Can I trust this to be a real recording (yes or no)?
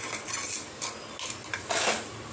yes